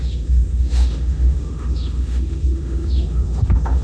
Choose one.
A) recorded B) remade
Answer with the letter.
B